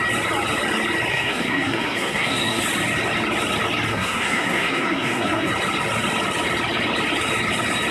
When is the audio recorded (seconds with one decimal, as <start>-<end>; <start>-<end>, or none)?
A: 0.0-1.1; 2.6-3.9; 5.5-7.9